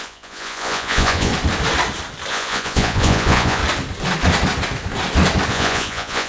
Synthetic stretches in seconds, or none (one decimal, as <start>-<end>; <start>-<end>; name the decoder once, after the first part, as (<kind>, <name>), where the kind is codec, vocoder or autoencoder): 0.0-1.3 (vocoder, Vocos); 2.3-3.6; 5.5-6.3